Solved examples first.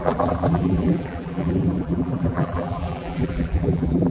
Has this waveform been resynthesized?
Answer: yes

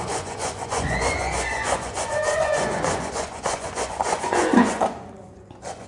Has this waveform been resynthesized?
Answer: yes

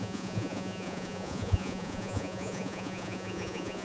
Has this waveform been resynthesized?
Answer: yes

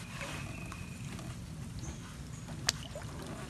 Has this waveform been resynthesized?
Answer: no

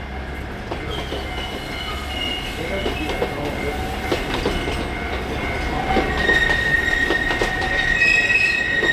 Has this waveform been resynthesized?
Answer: no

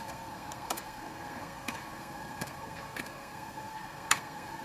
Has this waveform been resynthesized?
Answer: yes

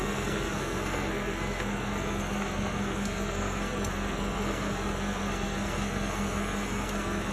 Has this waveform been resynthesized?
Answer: yes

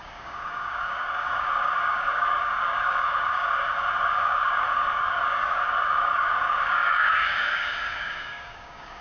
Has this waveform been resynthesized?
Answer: yes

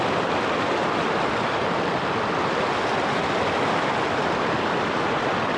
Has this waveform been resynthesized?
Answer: no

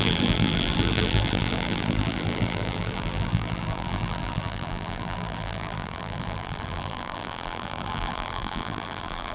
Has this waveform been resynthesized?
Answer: yes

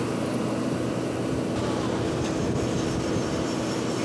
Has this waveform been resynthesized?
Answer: no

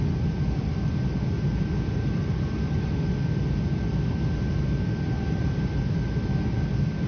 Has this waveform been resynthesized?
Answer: no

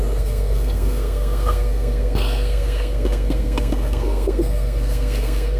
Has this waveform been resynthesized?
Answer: yes